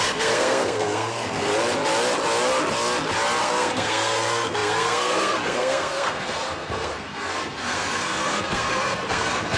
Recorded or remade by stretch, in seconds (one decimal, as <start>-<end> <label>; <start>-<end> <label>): 0.0-1.5 remade; 1.5-3.4 recorded; 3.4-9.6 remade